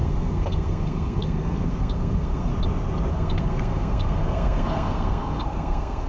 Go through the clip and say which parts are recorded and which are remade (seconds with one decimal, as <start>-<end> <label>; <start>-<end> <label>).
0.0-2.5 remade; 2.5-3.1 recorded; 3.1-6.1 remade